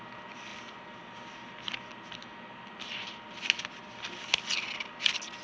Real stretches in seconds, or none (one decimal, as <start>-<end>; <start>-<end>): 0.0-5.4